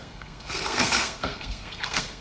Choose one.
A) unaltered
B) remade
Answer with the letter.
B